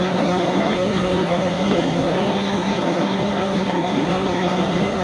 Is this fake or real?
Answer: fake